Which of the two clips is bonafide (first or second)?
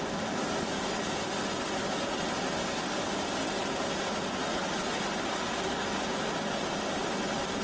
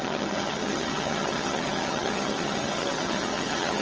first